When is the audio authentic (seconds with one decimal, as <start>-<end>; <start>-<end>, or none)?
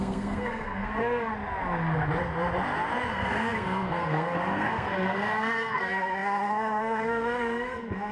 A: 1.3-3.1